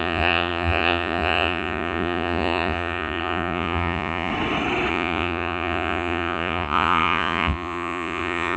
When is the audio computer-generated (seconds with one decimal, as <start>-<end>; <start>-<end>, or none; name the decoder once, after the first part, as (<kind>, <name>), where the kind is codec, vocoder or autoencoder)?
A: 0.0-4.3 (vocoder, Vocos); 4.9-8.6